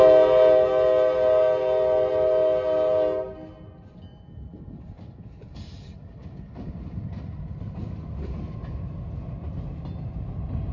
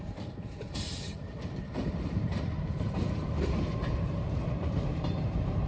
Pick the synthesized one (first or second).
second